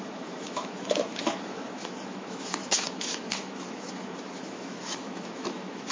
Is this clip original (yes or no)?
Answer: no